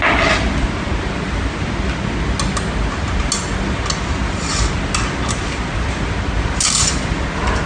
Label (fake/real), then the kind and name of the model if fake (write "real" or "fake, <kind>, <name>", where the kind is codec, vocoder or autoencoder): real